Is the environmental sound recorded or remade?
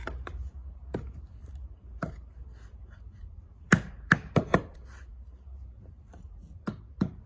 remade